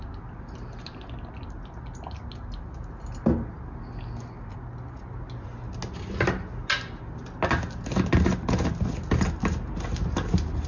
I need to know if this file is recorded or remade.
recorded